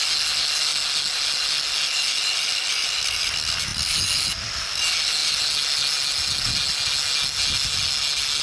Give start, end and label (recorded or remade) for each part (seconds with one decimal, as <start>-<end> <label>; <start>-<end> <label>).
0.0-8.4 recorded